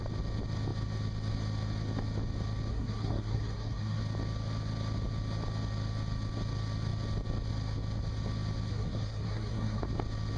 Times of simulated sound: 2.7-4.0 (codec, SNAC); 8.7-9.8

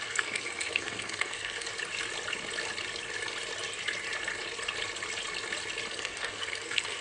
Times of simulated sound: 0.0-1.7 (codec, SNAC); 5.9-7.0

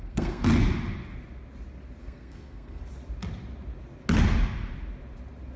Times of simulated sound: 0.0-0.5 (codec, SNAC); 2.0-2.8

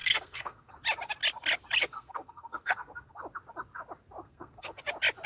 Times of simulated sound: 0.0-0.7 (codec, SNAC); 1.8-3.2; 4.2-4.8

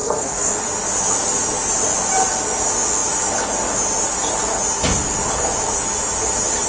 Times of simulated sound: 0.0-0.5 (codec, SNAC)